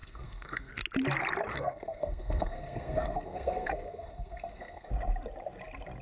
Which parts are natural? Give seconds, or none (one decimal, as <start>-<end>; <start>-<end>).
0.7-1.5; 4.9-6.0